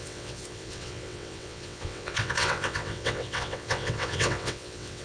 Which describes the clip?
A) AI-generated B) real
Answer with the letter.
A